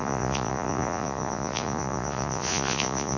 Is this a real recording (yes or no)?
no